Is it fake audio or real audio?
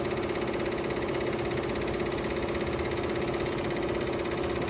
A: real